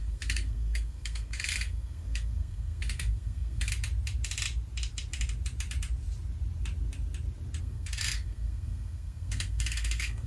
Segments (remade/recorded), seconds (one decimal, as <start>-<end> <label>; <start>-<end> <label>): 0.0-3.7 remade; 3.7-7.6 recorded; 7.6-10.3 remade